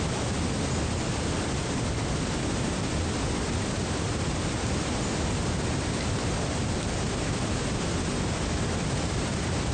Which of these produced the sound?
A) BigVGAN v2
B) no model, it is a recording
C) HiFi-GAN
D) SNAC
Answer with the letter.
B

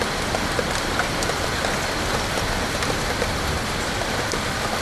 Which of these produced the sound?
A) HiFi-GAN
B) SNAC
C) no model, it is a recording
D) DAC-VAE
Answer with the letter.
C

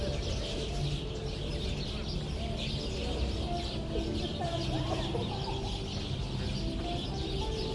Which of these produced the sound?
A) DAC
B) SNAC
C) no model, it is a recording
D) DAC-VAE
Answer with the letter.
C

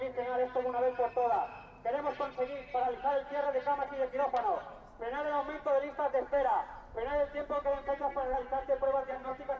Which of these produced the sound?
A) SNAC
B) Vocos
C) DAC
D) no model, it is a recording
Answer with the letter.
D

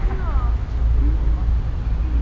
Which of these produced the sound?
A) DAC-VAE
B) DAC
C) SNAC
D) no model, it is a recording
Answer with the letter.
D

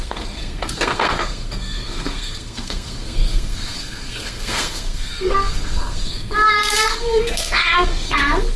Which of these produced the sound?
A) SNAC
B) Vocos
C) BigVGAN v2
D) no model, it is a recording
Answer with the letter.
A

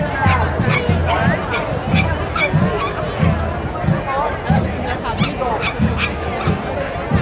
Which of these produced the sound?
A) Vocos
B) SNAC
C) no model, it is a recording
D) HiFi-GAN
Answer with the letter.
C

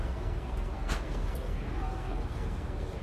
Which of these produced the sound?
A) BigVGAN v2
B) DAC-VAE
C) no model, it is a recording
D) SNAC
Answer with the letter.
D